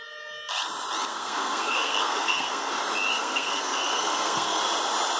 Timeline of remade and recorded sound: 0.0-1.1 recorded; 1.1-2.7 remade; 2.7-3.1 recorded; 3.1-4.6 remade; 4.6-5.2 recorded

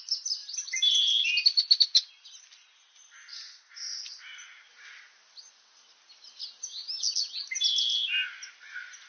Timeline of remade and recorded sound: 0.0-0.4 recorded; 0.4-1.0 remade; 1.0-9.1 recorded

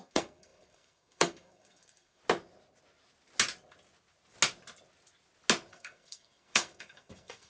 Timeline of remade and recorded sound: 0.0-2.2 remade; 2.2-5.7 recorded; 5.7-7.5 remade

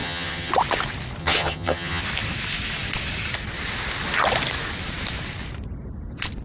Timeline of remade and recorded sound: 0.0-0.5 remade; 0.5-1.2 recorded; 1.2-2.0 remade; 2.0-6.4 recorded

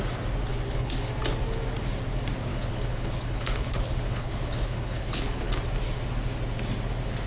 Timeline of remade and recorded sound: 0.0-0.5 recorded; 0.5-1.1 remade; 1.1-2.5 recorded; 2.5-5.5 remade; 5.5-7.3 recorded